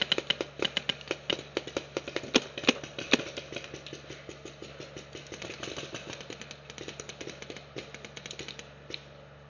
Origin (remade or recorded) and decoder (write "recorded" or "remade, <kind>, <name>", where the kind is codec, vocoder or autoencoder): recorded